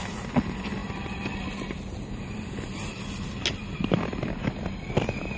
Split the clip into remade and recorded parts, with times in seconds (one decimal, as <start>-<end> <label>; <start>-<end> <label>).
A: 0.0-5.4 recorded